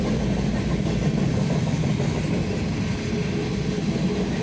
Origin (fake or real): real